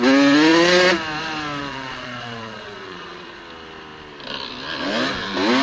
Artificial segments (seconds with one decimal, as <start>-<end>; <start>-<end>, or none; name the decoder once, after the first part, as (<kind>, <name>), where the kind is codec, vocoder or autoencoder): 1.6-3.4 (vocoder, Vocos)